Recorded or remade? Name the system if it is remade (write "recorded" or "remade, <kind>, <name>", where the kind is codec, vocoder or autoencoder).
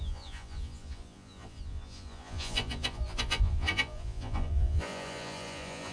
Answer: remade, vocoder, Vocos